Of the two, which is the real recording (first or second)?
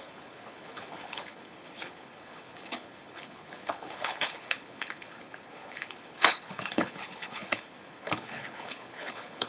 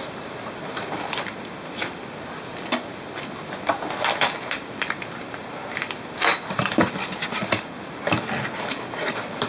second